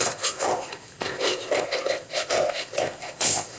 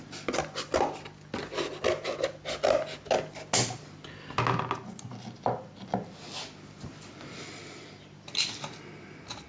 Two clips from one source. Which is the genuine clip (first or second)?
second